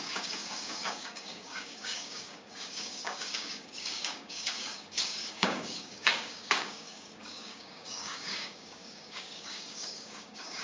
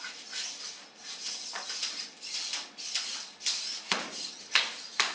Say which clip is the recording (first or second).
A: second